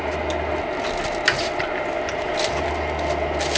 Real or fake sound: real